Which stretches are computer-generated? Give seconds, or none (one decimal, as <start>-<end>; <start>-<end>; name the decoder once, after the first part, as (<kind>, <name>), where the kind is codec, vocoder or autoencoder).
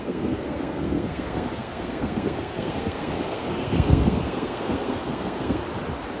0.0-5.6 (codec, SNAC)